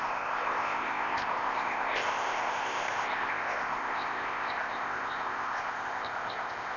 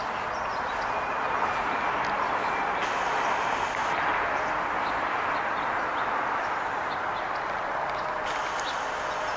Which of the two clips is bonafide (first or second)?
second